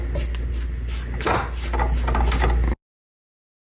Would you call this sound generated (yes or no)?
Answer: no